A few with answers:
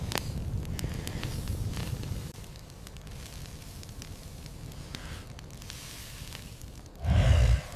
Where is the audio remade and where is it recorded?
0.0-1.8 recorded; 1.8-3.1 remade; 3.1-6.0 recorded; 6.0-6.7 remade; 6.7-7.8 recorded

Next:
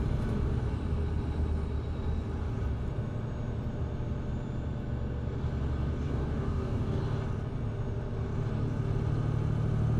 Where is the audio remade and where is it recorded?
0.0-5.9 recorded; 5.9-7.0 remade; 7.0-10.0 recorded

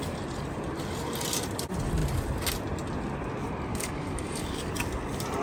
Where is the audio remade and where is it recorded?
0.0-3.7 recorded; 3.7-4.7 remade; 4.7-5.4 recorded

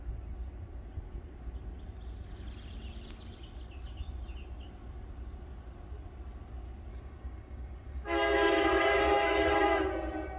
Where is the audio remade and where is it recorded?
0.0-6.9 recorded; 6.9-9.8 remade; 9.8-10.4 recorded

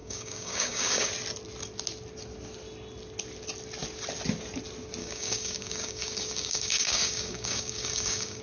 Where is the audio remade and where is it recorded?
0.0-1.1 remade; 1.1-5.0 recorded; 5.0-8.4 remade

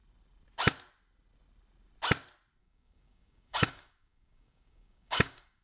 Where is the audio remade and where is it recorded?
0.0-2.6 recorded; 2.6-5.6 remade